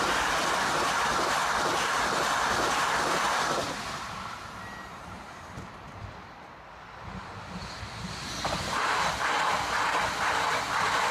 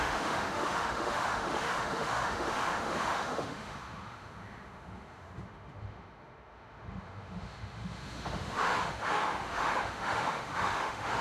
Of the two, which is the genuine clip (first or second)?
first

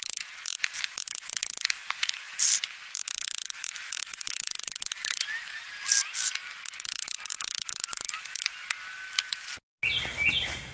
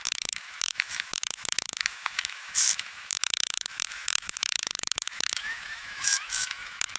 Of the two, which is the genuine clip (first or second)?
first